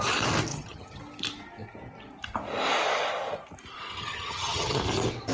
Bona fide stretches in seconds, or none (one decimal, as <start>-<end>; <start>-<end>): 0.0-0.5; 1.0-3.9; 4.8-5.3